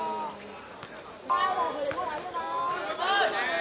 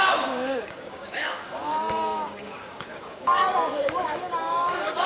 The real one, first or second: first